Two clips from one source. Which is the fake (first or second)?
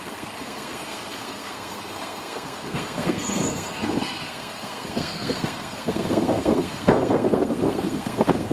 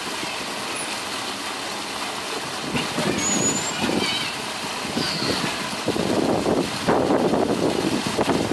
first